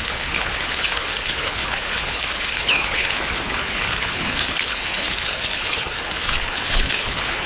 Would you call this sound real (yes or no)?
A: no